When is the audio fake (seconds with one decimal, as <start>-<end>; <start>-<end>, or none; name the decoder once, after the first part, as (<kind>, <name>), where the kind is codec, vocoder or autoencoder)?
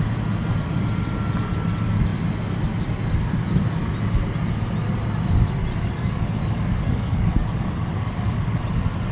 5.7-8.6 (codec, DAC)